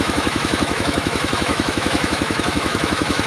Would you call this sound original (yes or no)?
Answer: no